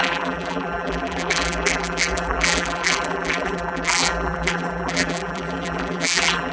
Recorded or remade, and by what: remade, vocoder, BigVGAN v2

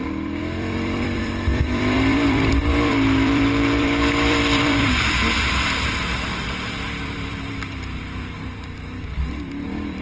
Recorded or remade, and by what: remade, vocoder, BigVGAN v2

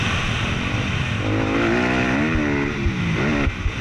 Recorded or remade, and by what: recorded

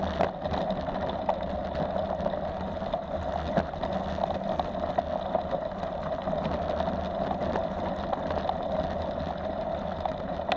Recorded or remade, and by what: recorded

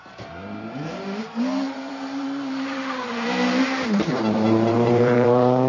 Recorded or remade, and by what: remade, vocoder, BigVGAN v2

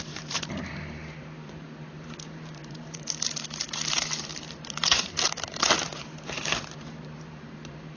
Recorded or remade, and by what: remade, vocoder, BigVGAN v2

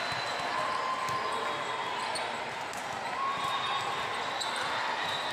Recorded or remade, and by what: recorded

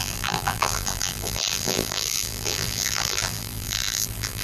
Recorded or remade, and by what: remade, vocoder, BigVGAN v2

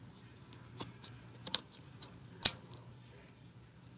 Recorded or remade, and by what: remade, vocoder, BigVGAN v2